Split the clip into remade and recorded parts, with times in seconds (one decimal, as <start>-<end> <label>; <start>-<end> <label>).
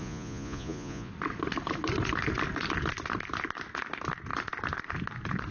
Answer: 0.0-1.1 remade; 1.1-5.5 recorded